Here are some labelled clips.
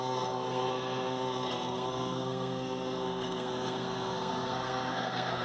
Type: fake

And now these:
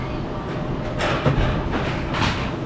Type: real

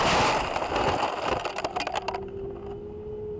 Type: real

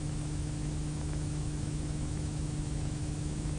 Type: fake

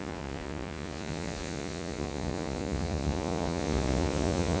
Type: fake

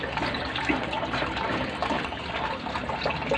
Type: fake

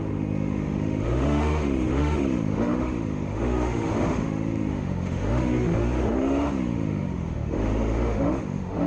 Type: fake